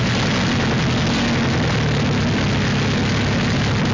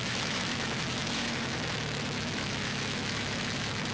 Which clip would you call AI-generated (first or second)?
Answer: second